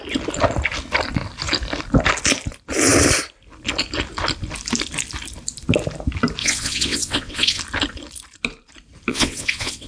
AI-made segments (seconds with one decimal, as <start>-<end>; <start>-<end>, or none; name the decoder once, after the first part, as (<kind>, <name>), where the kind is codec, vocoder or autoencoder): 6.4-7.6 (vocoder, WaveNeXt); 9.1-9.9